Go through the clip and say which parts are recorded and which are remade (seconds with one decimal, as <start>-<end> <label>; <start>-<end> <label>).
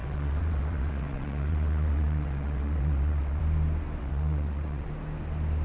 0.0-3.4 remade; 3.4-4.0 recorded; 4.0-4.9 remade; 4.9-5.6 recorded